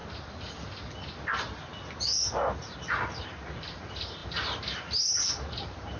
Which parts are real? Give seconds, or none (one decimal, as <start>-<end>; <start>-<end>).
0.0-3.6